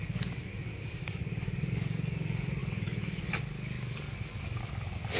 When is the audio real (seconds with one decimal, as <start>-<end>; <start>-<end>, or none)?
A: none